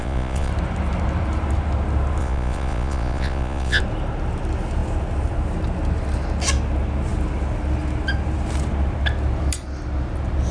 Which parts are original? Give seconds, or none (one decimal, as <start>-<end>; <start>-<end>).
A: 0.5-2.2; 3.8-10.5

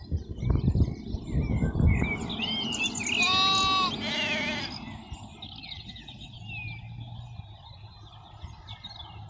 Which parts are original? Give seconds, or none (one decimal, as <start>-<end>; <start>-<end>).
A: 0.0-5.6; 6.4-9.3

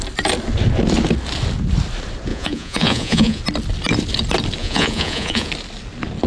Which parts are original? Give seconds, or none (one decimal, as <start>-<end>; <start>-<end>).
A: 0.0-2.3; 3.4-4.6; 5.5-6.3

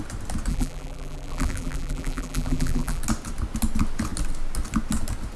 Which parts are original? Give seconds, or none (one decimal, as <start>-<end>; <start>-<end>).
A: 0.0-0.5; 3.0-5.4

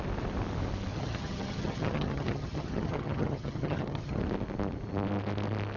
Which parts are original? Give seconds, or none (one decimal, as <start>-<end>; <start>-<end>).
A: 0.0-0.9; 4.2-5.8

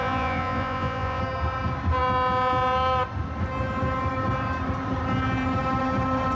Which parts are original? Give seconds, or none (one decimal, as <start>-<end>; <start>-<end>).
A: 1.2-6.3

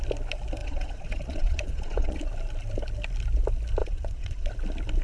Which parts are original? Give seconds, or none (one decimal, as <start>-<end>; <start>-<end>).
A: 0.0-0.6; 2.2-3.8; 4.5-5.0